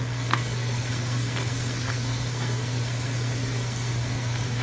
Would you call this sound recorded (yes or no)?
no